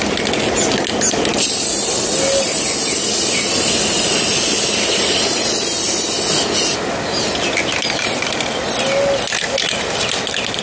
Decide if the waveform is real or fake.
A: real